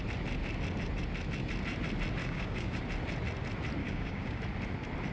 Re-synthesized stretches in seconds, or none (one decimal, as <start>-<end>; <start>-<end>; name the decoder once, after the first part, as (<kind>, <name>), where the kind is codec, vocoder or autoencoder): 2.2-2.8 (codec, DAC); 3.8-4.4